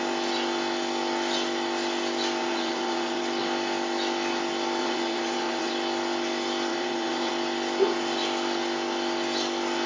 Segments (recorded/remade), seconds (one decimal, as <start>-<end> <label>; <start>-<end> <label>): 0.0-2.4 recorded; 2.4-3.2 remade; 3.2-4.8 recorded; 4.8-5.7 remade; 5.7-6.7 recorded; 6.7-7.3 remade; 7.3-9.9 recorded